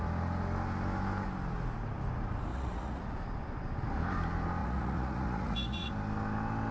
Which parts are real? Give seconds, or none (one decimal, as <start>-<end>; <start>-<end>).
0.0-2.5; 3.0-4.6; 5.9-6.7